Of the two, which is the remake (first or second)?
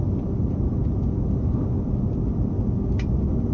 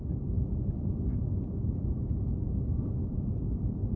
second